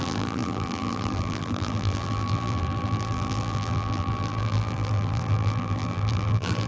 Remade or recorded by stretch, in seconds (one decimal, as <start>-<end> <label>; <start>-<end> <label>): 0.0-6.7 remade